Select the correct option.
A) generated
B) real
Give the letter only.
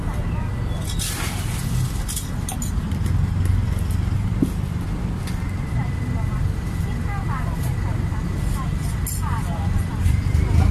B